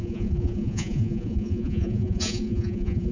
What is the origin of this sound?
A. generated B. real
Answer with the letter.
A